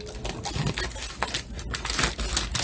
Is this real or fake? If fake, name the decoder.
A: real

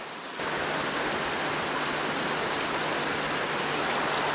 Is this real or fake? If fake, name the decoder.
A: real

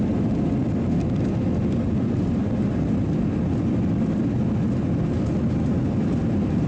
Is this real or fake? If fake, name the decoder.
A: real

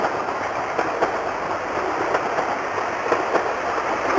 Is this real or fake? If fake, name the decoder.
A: real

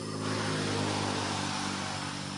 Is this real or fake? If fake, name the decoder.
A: real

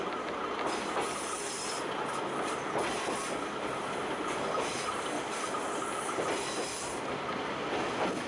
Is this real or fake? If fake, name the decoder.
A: real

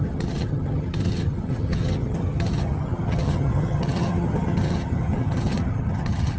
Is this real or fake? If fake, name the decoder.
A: fake, vocoder, HiFi-GAN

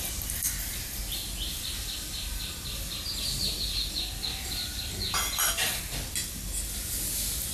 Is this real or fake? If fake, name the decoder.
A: real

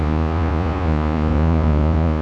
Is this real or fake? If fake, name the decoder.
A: fake, vocoder, Vocos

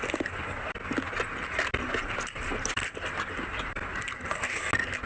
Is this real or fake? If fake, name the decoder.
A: real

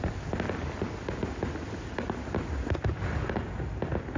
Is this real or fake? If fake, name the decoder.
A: real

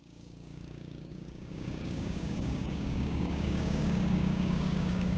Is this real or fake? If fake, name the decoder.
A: fake, codec, DAC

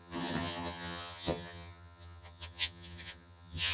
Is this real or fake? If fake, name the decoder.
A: fake, vocoder, HiFi-GAN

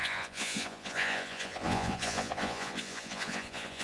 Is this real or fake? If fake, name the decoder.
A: fake, vocoder, Vocos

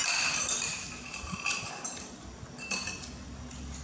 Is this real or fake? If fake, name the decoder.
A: real